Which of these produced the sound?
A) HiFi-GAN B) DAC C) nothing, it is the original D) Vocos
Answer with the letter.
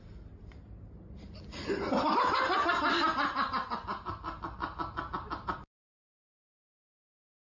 C